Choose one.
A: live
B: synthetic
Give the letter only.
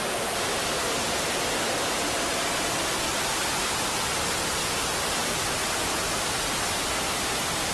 A